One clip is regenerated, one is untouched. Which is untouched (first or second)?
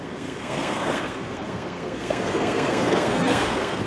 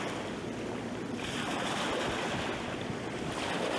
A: second